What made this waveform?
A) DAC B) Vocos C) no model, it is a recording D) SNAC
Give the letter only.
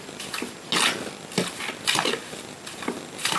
C